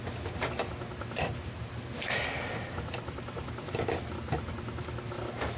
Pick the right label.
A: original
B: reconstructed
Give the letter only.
A